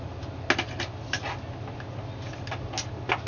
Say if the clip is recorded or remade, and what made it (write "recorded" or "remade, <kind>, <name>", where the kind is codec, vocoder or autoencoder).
recorded